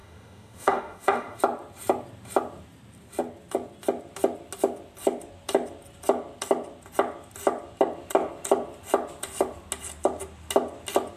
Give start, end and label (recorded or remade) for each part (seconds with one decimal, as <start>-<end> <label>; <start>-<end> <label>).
0.0-1.4 remade; 1.4-11.2 recorded